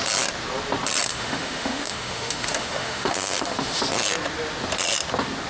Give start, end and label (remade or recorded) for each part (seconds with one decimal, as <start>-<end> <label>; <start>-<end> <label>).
0.0-1.1 recorded; 1.1-3.8 remade; 3.8-5.5 recorded